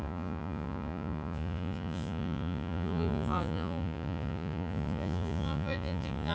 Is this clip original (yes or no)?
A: no